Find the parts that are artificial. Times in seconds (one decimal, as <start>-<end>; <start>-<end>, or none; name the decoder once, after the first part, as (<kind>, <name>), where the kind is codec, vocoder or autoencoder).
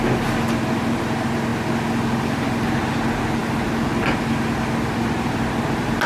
none